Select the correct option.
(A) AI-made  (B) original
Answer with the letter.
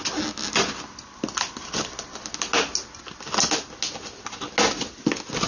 B